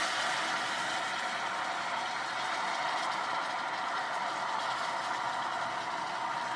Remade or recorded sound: recorded